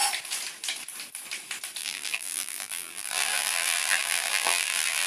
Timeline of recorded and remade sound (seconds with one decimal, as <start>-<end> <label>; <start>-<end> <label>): 0.0-1.8 recorded; 1.8-5.1 remade